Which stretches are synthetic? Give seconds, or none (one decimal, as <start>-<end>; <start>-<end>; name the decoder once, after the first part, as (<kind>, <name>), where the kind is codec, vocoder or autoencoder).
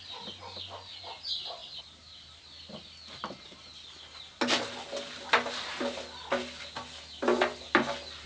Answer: none